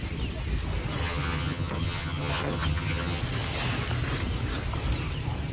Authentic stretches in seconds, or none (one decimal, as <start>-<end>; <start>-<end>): 0.0-1.0; 3.2-5.5